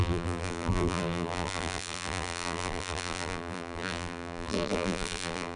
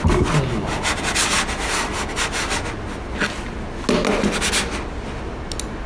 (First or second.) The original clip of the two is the second